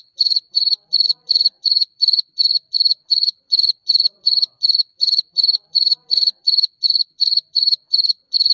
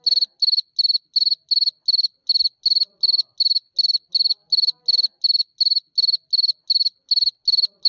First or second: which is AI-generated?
first